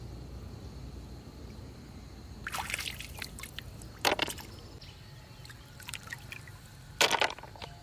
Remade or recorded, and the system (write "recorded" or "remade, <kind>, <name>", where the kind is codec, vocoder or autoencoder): recorded